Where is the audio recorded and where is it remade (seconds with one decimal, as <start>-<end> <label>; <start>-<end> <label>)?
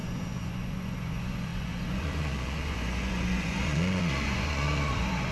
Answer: 0.0-5.3 remade